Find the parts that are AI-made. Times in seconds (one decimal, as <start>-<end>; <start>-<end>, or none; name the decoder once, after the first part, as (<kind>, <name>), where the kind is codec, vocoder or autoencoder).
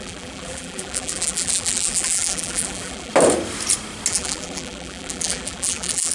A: 0.0-3.1 (vocoder, BigVGAN v2); 4.1-6.1